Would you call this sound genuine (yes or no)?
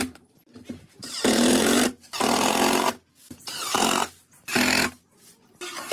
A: no